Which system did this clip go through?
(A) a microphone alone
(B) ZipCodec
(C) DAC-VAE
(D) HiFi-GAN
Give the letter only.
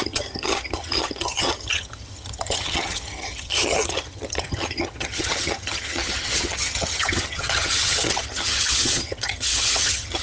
D